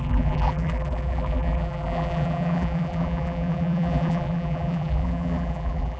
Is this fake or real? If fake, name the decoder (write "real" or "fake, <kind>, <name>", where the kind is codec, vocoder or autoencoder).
fake, vocoder, BigVGAN v2